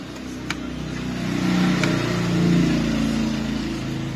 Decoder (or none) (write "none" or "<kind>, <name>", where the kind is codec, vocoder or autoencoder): none